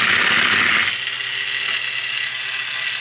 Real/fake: real